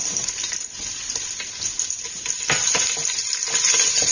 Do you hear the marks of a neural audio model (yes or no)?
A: no